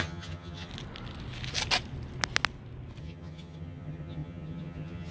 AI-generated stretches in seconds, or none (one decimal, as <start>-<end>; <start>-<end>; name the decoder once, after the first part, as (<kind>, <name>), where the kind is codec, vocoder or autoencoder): 0.0-0.7 (vocoder, HiFi-GAN); 3.0-5.1